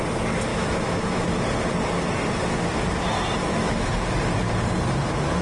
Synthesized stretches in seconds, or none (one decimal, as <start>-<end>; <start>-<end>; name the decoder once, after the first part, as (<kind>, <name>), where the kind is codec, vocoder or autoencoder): 0.5-1.4 (autoencoder, DAC-VAE); 3.4-3.9